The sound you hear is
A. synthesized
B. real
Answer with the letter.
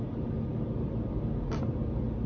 B